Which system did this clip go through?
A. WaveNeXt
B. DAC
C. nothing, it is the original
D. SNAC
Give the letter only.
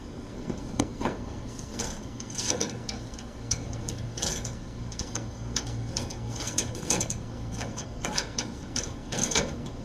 D